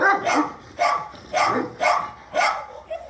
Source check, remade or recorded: remade